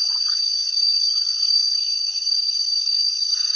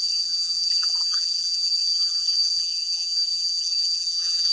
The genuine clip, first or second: first